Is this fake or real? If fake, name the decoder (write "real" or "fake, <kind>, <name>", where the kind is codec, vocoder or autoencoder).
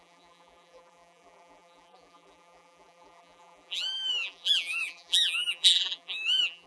fake, vocoder, BigVGAN v2